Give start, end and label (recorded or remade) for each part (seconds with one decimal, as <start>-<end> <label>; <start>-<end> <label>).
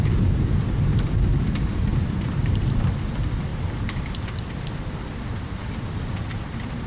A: 0.0-1.9 recorded; 1.9-2.8 remade; 2.8-6.9 recorded